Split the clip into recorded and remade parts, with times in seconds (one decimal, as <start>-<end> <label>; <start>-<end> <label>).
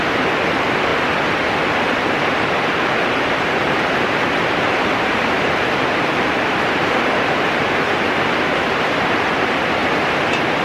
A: 0.0-0.9 remade; 0.9-1.5 recorded; 1.5-9.8 remade; 9.8-10.6 recorded